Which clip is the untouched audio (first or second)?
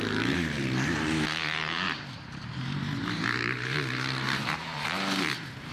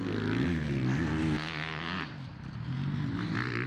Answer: second